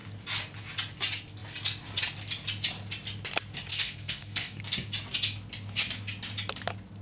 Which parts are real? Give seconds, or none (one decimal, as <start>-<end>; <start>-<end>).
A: 0.0-3.7; 4.6-7.0